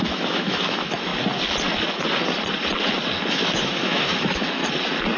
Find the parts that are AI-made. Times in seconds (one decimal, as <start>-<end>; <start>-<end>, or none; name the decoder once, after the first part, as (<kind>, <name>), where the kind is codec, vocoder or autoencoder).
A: 0.0-1.1 (autoencoder, DAC-VAE); 3.3-4.6